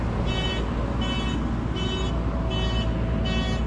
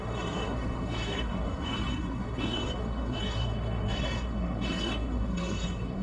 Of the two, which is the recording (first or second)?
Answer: first